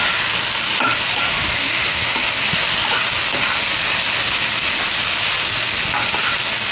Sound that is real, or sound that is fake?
real